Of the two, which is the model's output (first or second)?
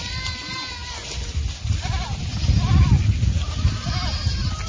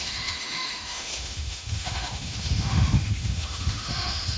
second